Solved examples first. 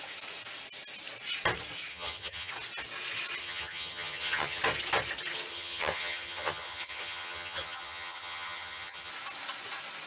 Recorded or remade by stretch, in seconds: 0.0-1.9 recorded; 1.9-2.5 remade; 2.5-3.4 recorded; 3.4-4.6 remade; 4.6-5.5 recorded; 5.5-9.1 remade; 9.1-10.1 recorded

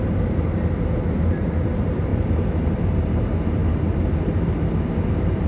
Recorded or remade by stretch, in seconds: 0.0-5.5 recorded